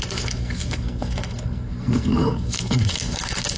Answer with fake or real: fake